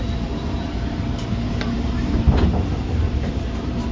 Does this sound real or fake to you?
fake